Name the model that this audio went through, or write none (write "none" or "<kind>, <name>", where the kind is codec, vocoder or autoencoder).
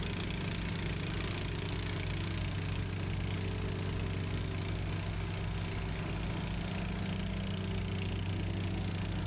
none